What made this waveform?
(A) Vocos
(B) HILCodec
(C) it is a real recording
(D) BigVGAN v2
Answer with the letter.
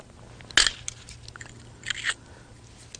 C